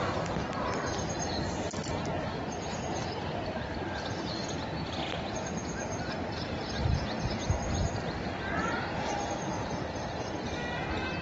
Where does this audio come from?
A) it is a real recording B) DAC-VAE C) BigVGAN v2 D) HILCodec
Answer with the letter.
A